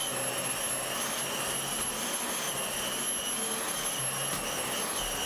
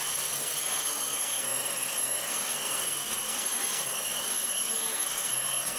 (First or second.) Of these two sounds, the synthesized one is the second